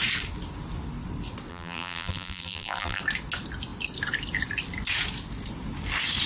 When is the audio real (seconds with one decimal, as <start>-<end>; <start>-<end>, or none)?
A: 0.0-1.5; 3.0-6.3

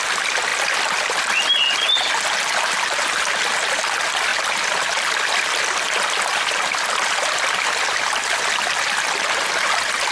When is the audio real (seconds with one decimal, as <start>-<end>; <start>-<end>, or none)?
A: 0.0-10.1

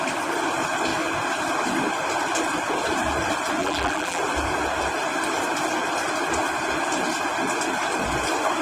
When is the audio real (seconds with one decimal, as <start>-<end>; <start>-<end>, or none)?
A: 0.0-3.6; 4.2-8.6

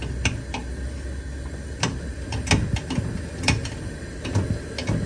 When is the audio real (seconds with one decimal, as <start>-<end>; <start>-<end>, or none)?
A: 0.0-5.1

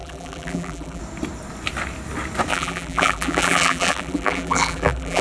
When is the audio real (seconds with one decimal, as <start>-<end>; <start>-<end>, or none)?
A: 1.0-2.5